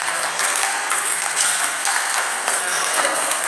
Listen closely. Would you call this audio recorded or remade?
remade